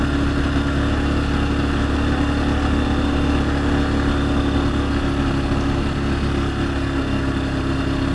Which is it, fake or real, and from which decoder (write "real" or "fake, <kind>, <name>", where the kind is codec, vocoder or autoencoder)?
real